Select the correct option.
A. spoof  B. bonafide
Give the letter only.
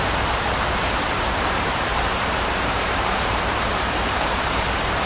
A